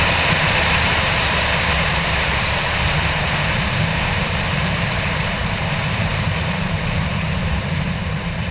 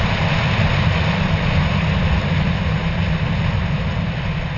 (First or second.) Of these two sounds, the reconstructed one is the first